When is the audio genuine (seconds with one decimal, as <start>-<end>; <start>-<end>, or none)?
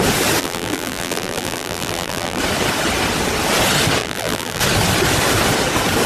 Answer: 0.0-0.4; 2.4-4.0; 4.6-6.1